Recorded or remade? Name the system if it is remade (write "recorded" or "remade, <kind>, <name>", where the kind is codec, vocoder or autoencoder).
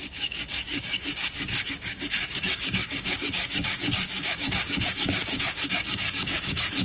remade, codec, DAC